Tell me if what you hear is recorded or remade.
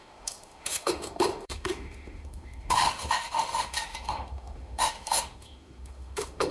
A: remade